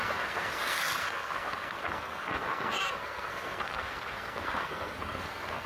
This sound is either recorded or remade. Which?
remade